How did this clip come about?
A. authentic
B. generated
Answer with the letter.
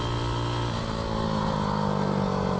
A